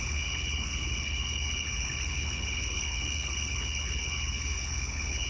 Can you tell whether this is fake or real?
fake